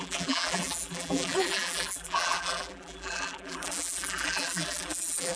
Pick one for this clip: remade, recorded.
remade